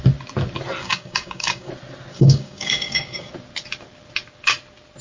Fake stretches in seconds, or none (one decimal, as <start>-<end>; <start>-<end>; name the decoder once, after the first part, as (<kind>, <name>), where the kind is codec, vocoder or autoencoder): 0.8-1.7 (codec, DAC); 2.1-3.3